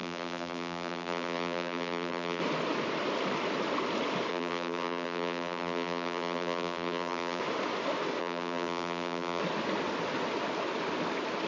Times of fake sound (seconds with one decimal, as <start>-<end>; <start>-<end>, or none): 0.0-2.4; 4.3-7.4; 8.2-9.4